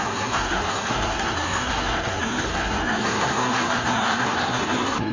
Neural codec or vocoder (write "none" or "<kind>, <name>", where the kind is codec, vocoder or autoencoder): codec, SNAC